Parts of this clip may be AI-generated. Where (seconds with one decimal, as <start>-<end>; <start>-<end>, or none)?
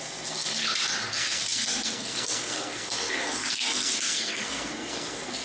0.0-0.6; 1.1-5.4